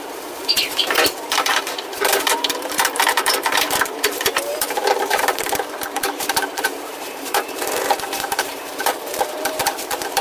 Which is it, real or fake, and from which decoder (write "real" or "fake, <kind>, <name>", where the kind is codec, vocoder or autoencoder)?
fake, vocoder, BigVGAN v2